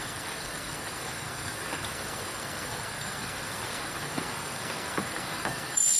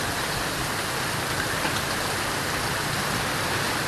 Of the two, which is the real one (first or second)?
second